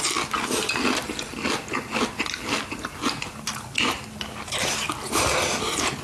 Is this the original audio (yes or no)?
yes